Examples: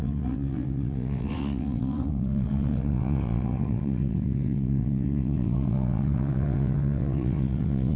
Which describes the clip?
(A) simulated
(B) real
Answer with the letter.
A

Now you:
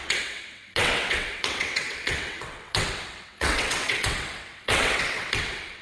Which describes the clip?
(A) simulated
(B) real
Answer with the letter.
A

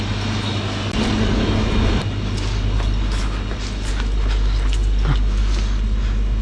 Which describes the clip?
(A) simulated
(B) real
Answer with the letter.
B